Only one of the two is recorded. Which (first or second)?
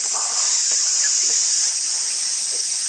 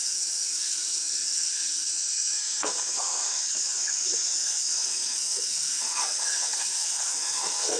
first